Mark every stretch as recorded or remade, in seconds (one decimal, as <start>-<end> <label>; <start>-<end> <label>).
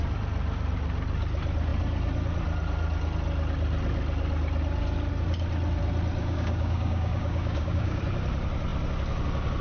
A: 0.0-6.2 recorded; 6.2-8.0 remade; 8.0-9.6 recorded